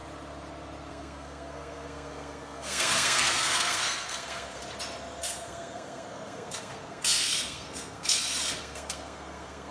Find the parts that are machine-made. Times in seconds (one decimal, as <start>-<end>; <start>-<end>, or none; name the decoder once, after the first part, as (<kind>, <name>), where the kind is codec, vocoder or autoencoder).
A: 0.9-4.6 (codec, SNAC); 5.2-9.7